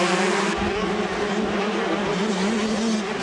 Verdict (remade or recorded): recorded